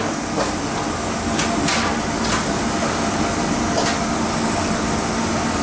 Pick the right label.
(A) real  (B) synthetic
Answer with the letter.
A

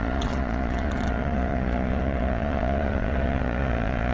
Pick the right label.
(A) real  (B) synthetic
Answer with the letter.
B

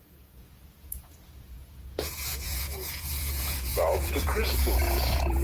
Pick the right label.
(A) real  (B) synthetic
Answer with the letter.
B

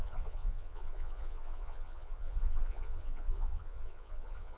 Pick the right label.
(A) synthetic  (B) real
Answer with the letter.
A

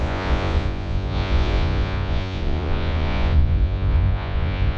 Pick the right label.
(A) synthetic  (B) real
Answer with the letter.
A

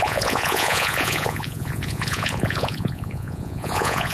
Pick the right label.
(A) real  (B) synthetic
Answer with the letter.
B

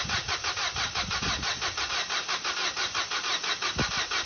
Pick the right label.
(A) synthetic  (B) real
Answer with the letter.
B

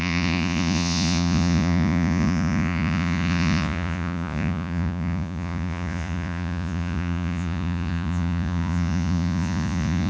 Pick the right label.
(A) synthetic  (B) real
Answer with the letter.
A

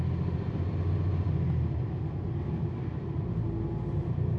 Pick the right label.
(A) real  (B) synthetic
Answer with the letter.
A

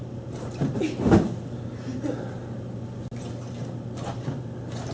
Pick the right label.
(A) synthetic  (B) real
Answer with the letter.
B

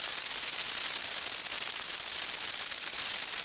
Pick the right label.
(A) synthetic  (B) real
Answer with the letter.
B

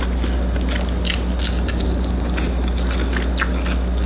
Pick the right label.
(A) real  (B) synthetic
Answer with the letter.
A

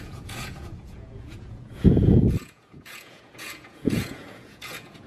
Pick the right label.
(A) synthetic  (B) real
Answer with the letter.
A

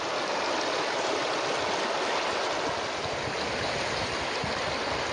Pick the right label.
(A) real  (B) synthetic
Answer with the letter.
A